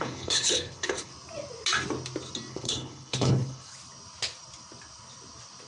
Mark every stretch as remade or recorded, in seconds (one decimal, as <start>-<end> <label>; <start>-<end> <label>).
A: 0.0-1.1 remade; 1.1-2.5 recorded; 2.5-3.7 remade; 3.7-5.7 recorded